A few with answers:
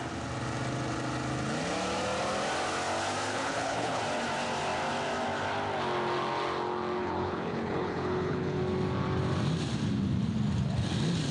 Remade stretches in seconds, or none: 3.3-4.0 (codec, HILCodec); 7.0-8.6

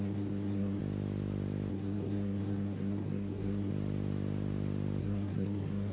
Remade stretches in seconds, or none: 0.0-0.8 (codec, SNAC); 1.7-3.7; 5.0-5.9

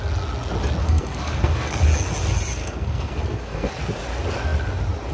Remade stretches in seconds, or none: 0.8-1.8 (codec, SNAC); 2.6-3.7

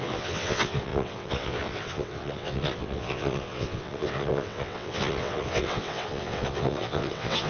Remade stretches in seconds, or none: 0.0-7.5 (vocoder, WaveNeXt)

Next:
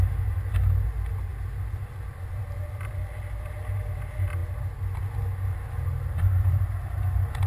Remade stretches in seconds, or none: none

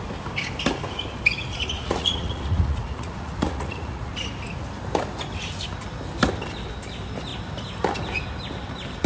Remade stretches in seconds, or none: 1.4-4.1 (vocoder, Vocos)

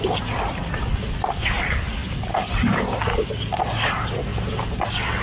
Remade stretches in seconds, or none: none

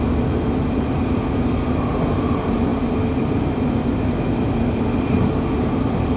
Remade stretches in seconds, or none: none